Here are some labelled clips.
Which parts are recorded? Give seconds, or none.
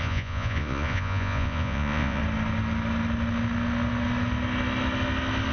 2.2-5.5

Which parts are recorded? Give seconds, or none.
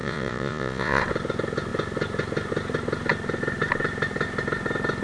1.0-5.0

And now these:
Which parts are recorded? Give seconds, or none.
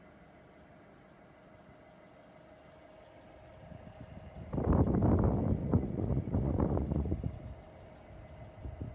0.0-5.6; 7.4-8.9